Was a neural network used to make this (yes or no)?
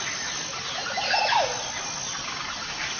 no